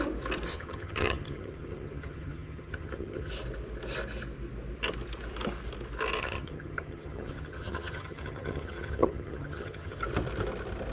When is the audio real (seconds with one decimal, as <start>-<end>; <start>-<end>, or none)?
0.0-0.5; 3.3-6.2; 10.0-10.9